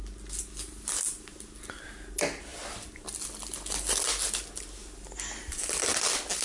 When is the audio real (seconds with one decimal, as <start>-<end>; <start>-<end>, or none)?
0.0-6.4